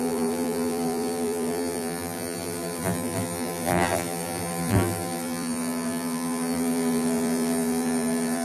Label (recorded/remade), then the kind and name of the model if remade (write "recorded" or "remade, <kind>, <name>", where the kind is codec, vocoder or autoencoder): remade, vocoder, BigVGAN v2